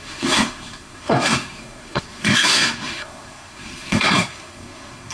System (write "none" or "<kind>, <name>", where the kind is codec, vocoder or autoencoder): codec, SNAC